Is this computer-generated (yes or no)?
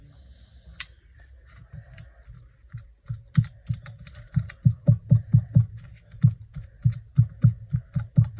no